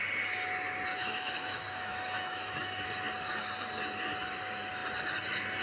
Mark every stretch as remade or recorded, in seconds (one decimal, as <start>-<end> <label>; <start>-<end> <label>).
0.0-0.9 recorded; 0.9-2.9 remade; 2.9-5.6 recorded

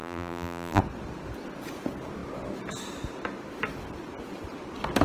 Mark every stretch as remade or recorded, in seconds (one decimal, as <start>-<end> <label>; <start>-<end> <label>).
0.0-0.8 remade; 0.8-5.0 recorded

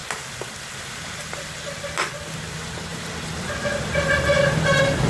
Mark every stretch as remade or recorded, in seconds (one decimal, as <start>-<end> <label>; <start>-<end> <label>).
0.0-2.1 remade; 2.1-2.9 recorded; 2.9-3.9 remade; 3.9-5.1 recorded

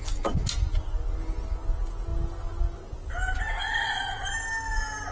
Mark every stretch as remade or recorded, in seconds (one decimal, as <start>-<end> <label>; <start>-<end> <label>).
0.0-3.6 recorded; 3.6-4.3 remade; 4.3-5.1 recorded

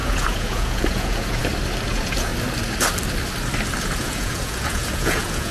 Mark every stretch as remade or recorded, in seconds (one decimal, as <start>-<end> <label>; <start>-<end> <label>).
0.0-1.4 remade; 1.4-1.9 recorded; 1.9-2.3 remade; 2.3-3.8 recorded; 3.8-5.5 remade

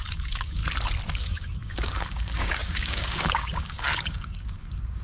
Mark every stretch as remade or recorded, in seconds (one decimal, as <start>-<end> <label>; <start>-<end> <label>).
0.0-0.6 remade; 0.6-1.1 recorded; 1.1-5.0 remade

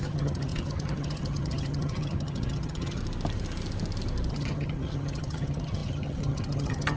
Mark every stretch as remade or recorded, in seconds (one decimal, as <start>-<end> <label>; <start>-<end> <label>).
0.0-3.0 remade; 3.0-4.3 recorded; 4.3-7.0 remade